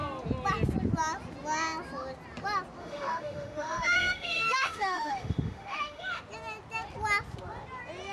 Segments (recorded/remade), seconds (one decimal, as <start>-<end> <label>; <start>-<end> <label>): 0.0-2.8 recorded; 2.8-6.2 remade; 6.2-8.1 recorded